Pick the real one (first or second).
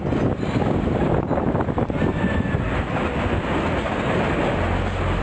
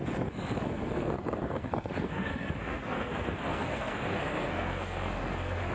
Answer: first